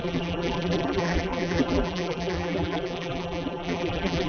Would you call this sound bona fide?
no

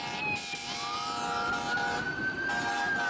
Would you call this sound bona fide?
yes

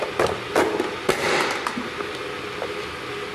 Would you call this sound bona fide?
yes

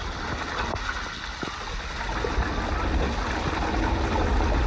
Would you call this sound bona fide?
yes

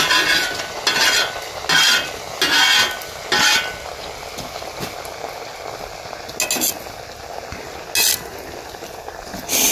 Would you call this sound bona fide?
yes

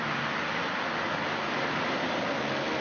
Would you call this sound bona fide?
yes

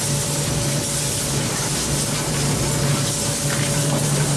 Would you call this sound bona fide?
yes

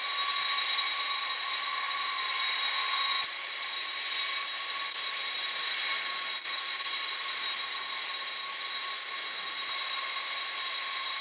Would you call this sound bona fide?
yes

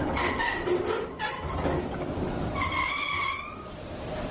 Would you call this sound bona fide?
yes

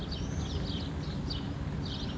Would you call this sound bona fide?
yes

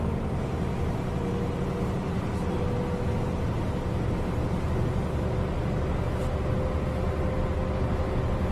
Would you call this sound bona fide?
yes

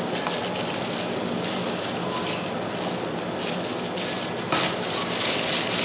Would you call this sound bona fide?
yes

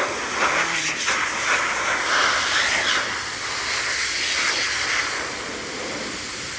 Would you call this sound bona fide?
no